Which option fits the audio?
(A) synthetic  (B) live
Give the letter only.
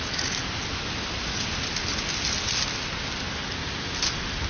B